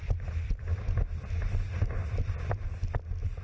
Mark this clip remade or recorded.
recorded